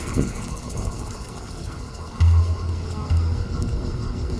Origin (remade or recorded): remade